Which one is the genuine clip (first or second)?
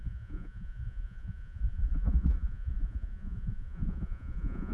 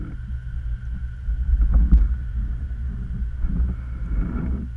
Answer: second